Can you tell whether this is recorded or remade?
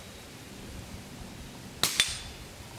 recorded